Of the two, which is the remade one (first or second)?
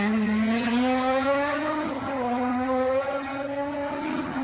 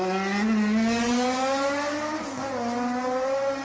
first